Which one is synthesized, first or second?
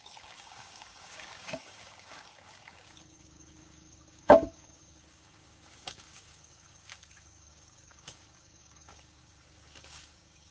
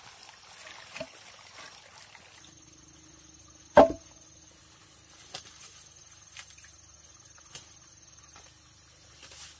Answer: first